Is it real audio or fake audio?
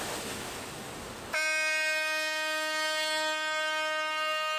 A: real